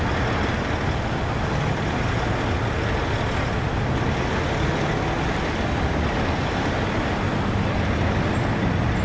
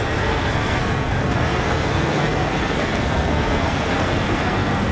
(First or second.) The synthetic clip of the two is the second